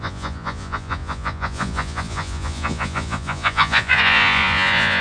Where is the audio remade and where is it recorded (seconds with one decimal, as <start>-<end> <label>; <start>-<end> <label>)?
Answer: 0.0-5.0 remade